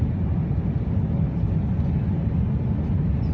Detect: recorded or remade recorded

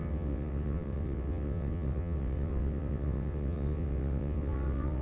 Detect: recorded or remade remade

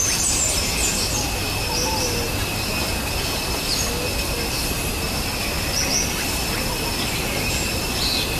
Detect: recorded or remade recorded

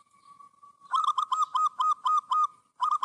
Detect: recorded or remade recorded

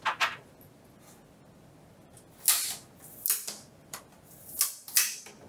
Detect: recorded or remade recorded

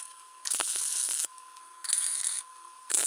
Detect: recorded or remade remade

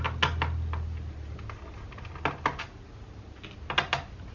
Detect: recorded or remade recorded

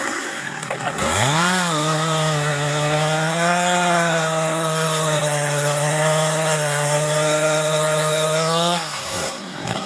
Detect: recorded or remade remade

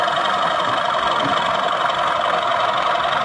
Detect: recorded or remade recorded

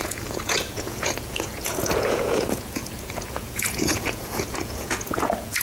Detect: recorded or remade remade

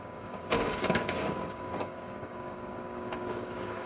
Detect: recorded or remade remade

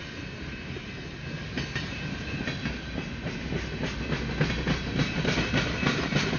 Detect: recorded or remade recorded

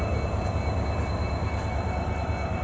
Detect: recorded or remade recorded